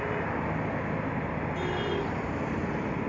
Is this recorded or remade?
recorded